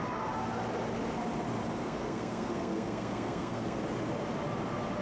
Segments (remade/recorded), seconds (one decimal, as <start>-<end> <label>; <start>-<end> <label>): 0.0-1.8 recorded; 1.8-3.8 remade; 3.8-5.0 recorded